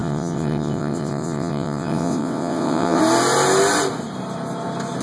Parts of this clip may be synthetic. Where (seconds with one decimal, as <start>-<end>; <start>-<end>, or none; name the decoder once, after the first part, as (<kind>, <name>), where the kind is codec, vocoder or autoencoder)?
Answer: 0.0-3.0 (vocoder, WaveNeXt)